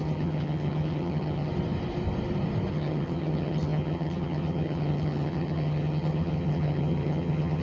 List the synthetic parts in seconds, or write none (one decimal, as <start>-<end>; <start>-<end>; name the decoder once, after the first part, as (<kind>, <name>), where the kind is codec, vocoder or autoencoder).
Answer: 0.0-1.5 (vocoder, HiFi-GAN); 2.7-7.6